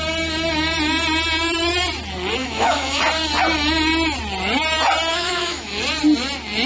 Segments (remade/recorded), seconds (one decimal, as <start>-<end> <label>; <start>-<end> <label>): 0.0-2.4 recorded; 2.4-3.0 remade; 3.0-5.1 recorded; 5.1-5.8 remade; 5.8-6.7 recorded